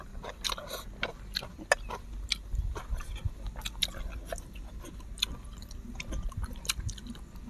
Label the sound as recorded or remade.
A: recorded